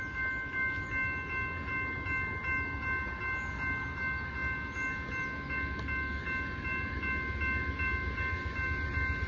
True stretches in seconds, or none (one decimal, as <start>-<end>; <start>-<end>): 0.0-9.3